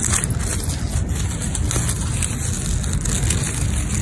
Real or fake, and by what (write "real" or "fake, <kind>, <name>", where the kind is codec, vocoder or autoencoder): real